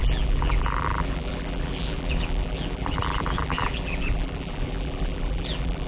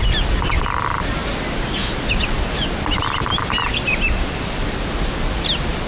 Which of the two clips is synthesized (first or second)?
first